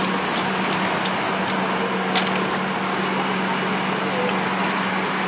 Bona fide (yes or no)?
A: yes